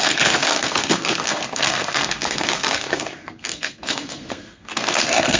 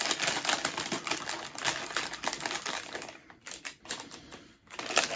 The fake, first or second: first